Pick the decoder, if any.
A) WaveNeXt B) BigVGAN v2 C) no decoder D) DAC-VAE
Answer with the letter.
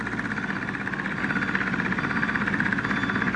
C